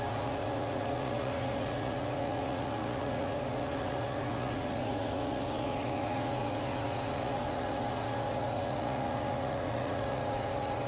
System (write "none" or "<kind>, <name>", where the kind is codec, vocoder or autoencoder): vocoder, Vocos